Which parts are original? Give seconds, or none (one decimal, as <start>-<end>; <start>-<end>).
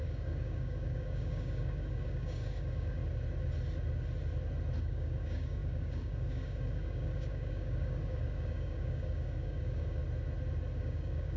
3.0-4.8; 10.0-10.8